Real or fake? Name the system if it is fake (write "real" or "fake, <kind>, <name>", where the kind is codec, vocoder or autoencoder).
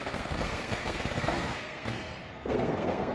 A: fake, codec, SNAC